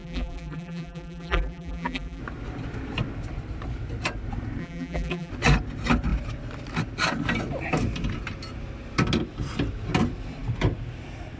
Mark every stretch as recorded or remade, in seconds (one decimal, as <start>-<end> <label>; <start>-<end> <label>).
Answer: 0.0-2.2 remade; 2.2-4.6 recorded; 4.6-5.3 remade; 5.3-11.4 recorded